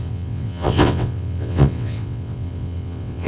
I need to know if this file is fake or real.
fake